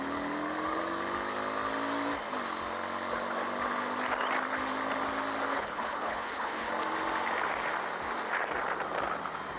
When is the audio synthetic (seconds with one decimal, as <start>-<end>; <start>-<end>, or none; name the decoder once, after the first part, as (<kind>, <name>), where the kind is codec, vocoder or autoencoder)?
5.5-6.7 (codec, HILCodec)